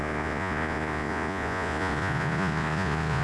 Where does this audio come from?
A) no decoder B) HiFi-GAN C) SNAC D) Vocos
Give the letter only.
D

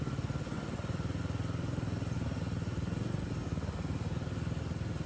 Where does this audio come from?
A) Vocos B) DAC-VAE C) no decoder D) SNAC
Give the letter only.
C